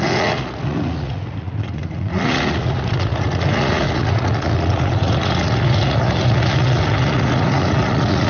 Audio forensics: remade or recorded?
remade